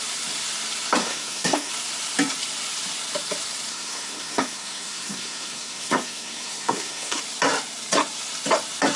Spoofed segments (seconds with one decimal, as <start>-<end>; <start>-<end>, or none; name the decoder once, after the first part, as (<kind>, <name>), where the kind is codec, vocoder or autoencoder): 1.0-1.7 (codec, SNAC); 3.7-7.2